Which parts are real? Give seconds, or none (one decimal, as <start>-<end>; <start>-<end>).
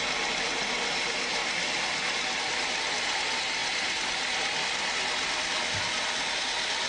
0.0-6.9